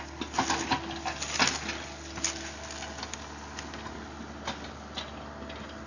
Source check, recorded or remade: recorded